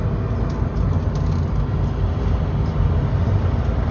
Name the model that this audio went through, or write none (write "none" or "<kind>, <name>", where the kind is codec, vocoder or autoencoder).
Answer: none